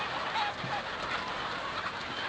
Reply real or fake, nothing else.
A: real